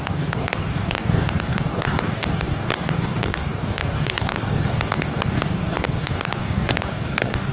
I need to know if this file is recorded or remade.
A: remade